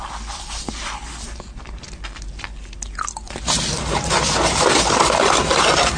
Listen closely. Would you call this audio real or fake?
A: real